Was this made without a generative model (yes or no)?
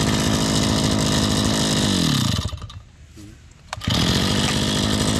yes